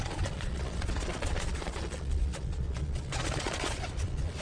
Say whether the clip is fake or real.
fake